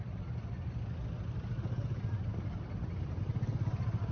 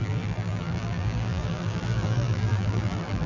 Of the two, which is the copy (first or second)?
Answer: second